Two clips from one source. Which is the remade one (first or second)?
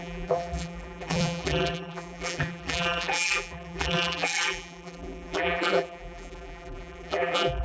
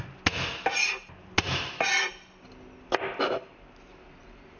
first